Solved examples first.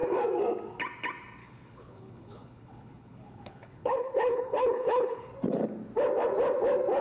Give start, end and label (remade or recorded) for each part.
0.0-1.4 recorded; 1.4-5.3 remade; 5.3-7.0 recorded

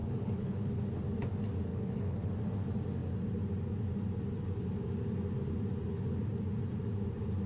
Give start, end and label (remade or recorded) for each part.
0.0-1.0 remade; 1.0-1.7 recorded; 1.7-2.3 remade; 2.3-7.5 recorded

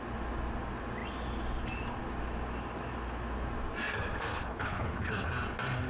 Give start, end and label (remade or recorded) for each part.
0.0-4.3 recorded; 4.3-5.3 remade; 5.3-5.9 recorded

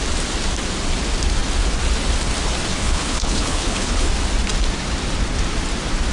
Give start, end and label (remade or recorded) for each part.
0.0-2.7 recorded; 2.7-4.1 remade; 4.1-6.1 recorded